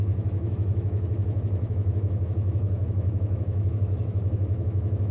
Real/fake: fake